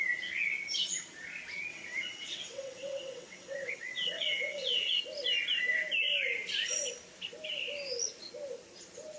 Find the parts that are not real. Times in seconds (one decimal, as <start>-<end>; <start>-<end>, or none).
1.7-5.0